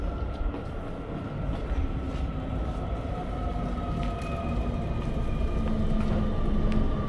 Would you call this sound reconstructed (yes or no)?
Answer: no